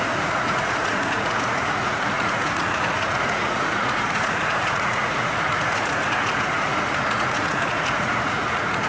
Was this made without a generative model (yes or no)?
no